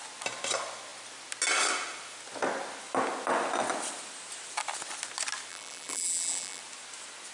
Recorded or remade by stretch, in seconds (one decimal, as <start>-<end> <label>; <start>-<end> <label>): 0.0-5.5 recorded; 5.5-6.6 remade; 6.6-7.3 recorded